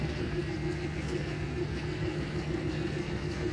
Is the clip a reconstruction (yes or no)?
yes